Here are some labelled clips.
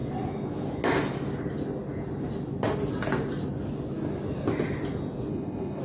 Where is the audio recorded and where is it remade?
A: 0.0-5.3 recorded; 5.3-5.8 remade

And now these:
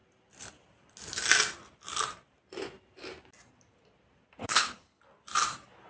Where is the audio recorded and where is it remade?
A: 0.0-4.4 recorded; 4.4-5.0 remade; 5.0-5.9 recorded

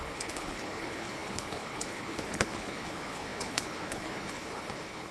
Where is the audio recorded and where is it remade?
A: 0.0-5.1 remade

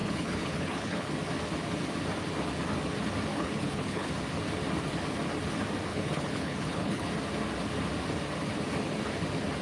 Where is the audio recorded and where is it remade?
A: 0.0-1.1 remade; 1.1-3.3 recorded; 3.3-4.1 remade; 4.1-5.9 recorded; 5.9-7.1 remade; 7.1-9.6 recorded

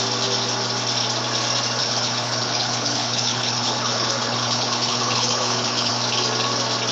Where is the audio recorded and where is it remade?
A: 0.0-1.8 recorded; 1.8-5.9 remade; 5.9-6.9 recorded

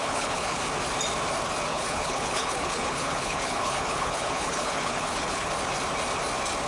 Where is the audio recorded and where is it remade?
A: 0.0-0.6 remade; 0.6-1.7 recorded; 1.7-5.5 remade; 5.5-6.7 recorded

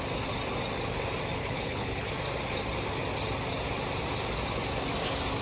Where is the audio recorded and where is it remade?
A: 0.0-1.4 recorded; 1.4-2.1 remade; 2.1-5.4 recorded

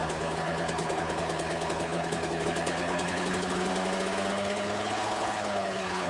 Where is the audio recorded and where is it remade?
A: 0.0-3.7 remade; 3.7-4.3 recorded; 4.3-6.1 remade